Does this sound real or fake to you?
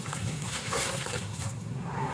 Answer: fake